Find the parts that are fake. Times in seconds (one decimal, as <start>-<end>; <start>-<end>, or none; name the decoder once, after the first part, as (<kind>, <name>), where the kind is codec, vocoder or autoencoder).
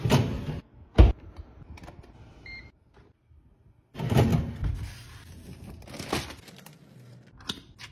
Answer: 0.0-1.0 (vocoder, BigVGAN v2); 2.3-4.3; 5.5-7.9